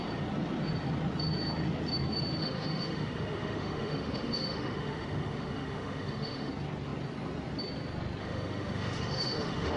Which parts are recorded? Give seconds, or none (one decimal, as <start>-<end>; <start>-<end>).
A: 0.0-2.4; 6.5-8.2